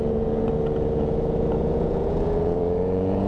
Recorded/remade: remade